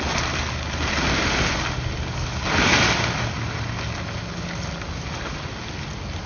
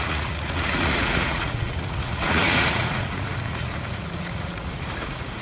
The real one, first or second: first